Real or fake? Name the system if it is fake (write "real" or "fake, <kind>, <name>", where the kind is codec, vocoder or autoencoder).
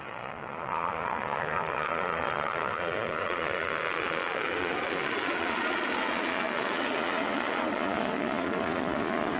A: fake, vocoder, Vocos